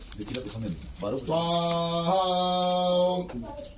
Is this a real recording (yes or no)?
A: yes